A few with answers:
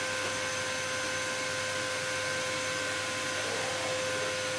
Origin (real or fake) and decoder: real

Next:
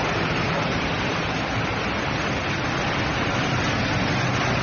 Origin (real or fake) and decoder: real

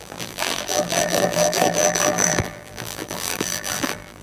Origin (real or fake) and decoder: fake, vocoder, BigVGAN v2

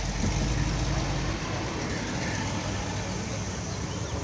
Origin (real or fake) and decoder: real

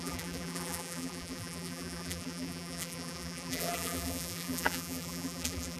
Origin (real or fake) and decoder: fake, vocoder, BigVGAN v2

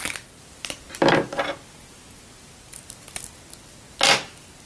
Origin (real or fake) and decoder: real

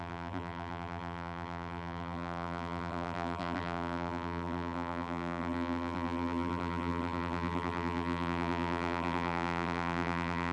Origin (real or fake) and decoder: fake, vocoder, BigVGAN v2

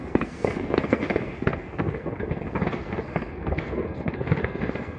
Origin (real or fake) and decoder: fake, codec, SNAC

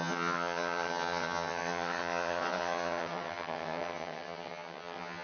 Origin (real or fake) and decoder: fake, vocoder, HiFi-GAN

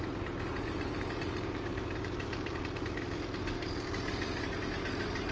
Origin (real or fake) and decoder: fake, vocoder, BigVGAN v2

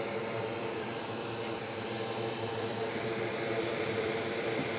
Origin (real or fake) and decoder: fake, vocoder, BigVGAN v2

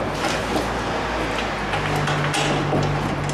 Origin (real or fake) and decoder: real